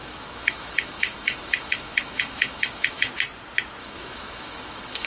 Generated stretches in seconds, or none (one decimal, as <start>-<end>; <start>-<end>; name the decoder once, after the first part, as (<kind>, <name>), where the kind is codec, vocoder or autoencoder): 0.0-3.1 (autoencoder, DAC-VAE); 3.8-5.1